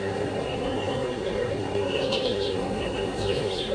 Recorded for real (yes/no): no